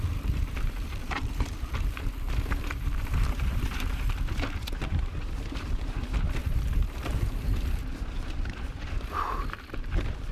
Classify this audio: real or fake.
fake